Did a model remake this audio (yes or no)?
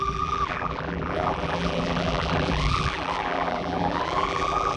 yes